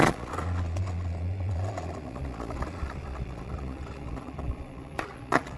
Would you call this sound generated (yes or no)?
yes